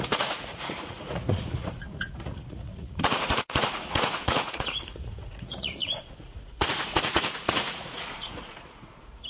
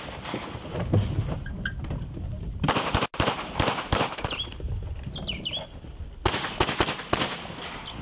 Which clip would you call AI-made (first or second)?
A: first